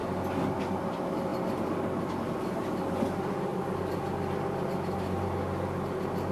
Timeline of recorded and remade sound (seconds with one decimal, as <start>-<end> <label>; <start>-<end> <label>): 0.0-6.3 recorded